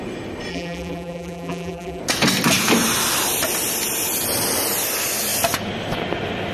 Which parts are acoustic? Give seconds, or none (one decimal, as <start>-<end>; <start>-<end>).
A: 0.0-0.5; 2.0-6.5

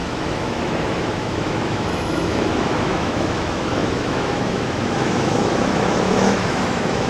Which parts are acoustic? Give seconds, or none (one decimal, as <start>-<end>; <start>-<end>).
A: none

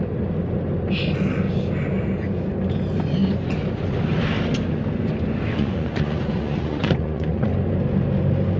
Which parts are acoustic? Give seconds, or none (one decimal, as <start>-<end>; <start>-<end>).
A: 0.0-5.6; 7.5-8.6